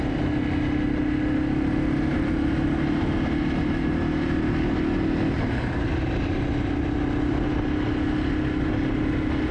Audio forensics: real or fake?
real